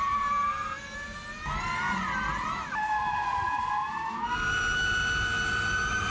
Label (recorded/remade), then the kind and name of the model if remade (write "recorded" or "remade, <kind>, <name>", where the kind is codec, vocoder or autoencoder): recorded